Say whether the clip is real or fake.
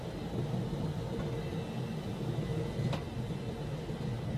real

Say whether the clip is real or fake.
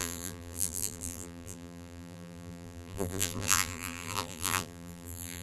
fake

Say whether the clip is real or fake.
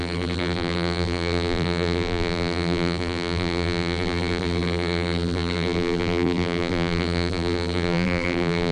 fake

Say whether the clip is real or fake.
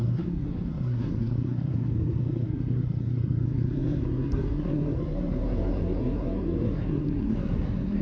fake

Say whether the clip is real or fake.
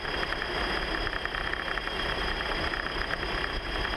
real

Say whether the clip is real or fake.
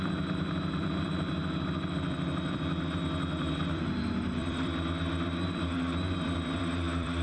fake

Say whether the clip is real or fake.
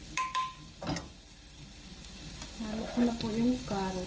real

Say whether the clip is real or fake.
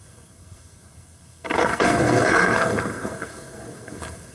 fake